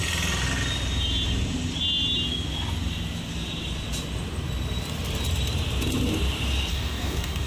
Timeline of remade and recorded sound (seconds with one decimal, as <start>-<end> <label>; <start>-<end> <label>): 0.0-6.7 recorded; 6.7-7.5 remade